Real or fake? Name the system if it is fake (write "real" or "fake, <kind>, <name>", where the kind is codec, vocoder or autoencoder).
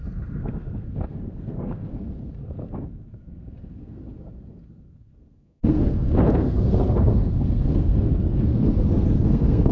fake, codec, SNAC